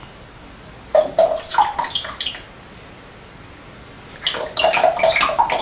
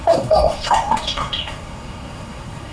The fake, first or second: second